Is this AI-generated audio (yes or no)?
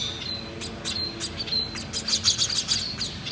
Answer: no